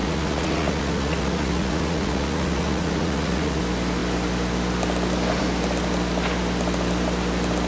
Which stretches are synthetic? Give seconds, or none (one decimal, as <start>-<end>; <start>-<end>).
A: 0.0-3.6